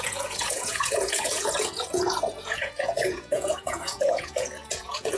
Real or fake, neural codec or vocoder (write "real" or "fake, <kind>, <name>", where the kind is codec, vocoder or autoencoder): fake, vocoder, Vocos